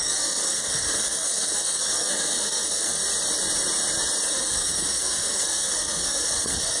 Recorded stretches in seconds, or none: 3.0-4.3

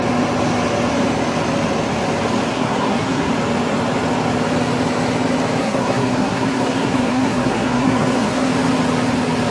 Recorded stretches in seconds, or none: 0.0-2.5; 3.3-5.6; 8.5-9.5